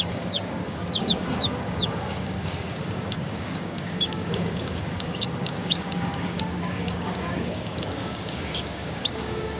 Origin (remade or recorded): remade